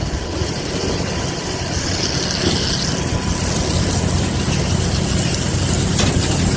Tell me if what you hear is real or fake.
real